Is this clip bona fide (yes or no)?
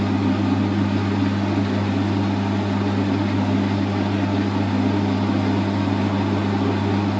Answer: yes